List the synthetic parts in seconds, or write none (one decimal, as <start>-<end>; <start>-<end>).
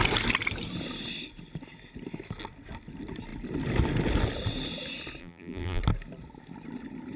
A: 5.2-5.8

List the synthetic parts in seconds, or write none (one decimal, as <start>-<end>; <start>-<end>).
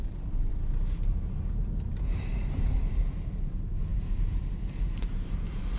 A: 0.0-0.5; 1.5-5.8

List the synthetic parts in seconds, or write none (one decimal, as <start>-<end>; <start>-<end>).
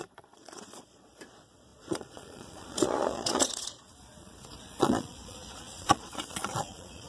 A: 0.0-7.1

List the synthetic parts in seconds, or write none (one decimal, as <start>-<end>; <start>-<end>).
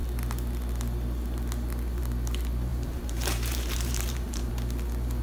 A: 2.7-4.5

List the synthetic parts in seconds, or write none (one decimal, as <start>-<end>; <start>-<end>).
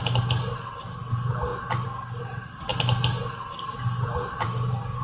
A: 0.8-1.5; 2.2-2.7; 3.5-5.0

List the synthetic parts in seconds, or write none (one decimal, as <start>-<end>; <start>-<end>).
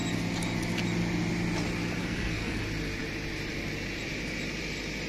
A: 2.0-2.6